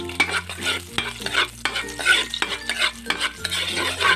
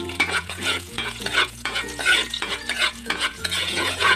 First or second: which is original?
first